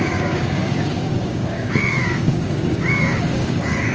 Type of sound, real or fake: fake